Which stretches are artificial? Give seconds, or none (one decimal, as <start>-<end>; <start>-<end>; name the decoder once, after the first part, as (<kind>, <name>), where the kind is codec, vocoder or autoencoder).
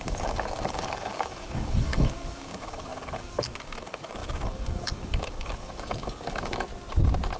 0.0-6.7 (codec, DAC)